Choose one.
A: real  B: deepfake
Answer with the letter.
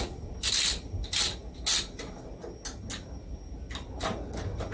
A